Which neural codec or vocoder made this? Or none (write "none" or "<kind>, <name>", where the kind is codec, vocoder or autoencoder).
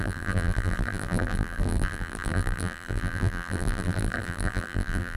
vocoder, BigVGAN v2